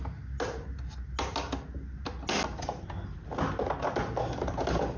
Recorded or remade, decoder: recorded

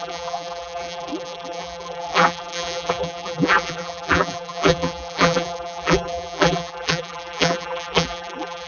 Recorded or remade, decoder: remade, vocoder, BigVGAN v2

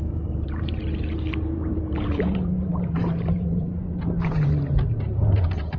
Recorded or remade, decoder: remade, vocoder, BigVGAN v2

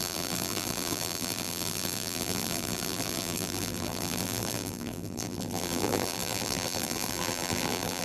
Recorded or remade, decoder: remade, vocoder, BigVGAN v2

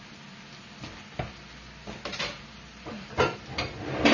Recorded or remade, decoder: recorded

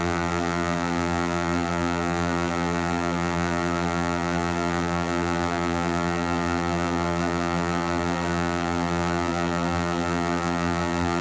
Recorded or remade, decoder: remade, vocoder, BigVGAN v2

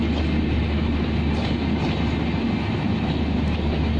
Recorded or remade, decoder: recorded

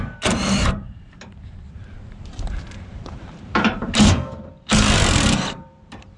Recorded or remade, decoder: remade, vocoder, BigVGAN v2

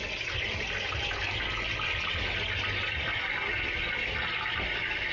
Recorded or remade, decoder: recorded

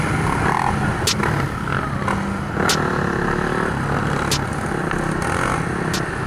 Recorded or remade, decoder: recorded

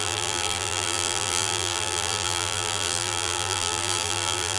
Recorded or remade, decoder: remade, vocoder, BigVGAN v2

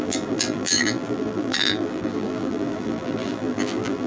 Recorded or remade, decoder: remade, vocoder, BigVGAN v2